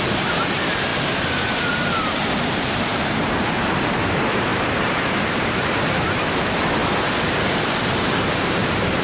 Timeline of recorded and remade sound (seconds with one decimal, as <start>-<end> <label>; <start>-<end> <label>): 0.0-6.8 remade; 6.8-7.3 recorded; 7.3-9.0 remade